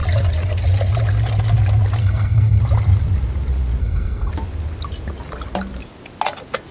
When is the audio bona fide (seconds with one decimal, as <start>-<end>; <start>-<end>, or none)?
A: 0.0-2.0; 2.6-3.8; 4.3-6.7